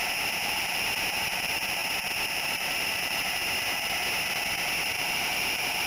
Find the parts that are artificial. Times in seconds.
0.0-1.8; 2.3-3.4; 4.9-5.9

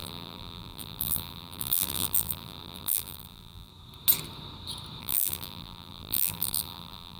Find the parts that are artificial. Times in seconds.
0.0-3.7; 5.0-7.2

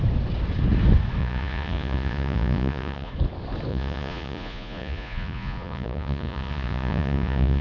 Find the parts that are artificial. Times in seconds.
1.2-3.1; 3.7-7.6